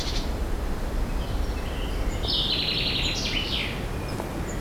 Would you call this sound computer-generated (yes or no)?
no